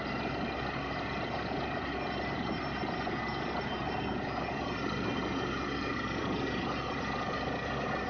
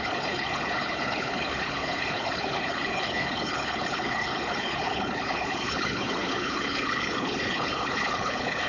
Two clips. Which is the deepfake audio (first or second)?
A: second